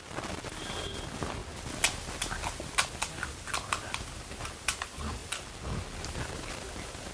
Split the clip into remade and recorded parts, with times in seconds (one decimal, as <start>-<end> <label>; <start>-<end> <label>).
0.0-7.1 recorded